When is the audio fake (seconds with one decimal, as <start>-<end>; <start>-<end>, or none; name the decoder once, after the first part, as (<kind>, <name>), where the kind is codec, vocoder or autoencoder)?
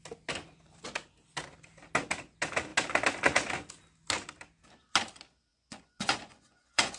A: 5.5-7.0 (vocoder, Vocos)